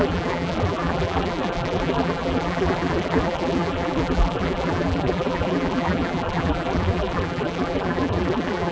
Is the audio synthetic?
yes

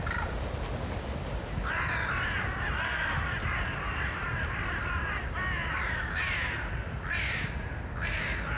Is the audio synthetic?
no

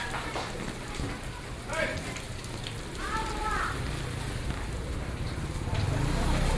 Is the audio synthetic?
no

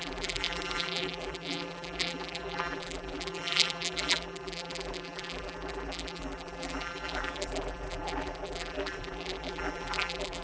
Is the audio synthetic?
yes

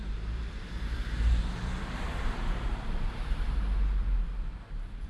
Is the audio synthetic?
yes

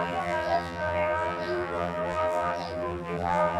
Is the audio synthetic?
yes